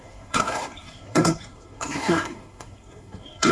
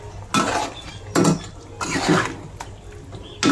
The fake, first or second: first